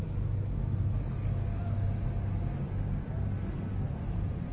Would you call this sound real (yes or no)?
yes